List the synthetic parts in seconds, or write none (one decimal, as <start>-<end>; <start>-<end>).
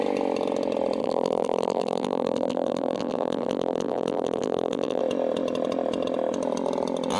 1.0-5.0